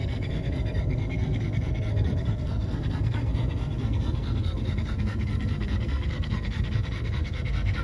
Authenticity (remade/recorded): remade